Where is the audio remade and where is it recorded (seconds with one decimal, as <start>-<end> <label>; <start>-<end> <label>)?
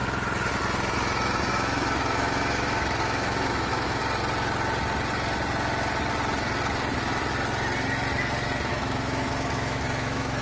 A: 0.0-1.5 recorded; 1.5-4.0 remade; 4.0-8.7 recorded; 8.7-10.4 remade